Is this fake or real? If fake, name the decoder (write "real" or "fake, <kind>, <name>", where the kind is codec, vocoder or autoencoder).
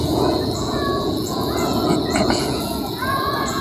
fake, vocoder, Vocos